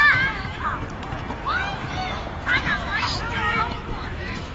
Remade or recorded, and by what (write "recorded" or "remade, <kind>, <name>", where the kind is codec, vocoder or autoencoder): remade, autoencoder, DAC-VAE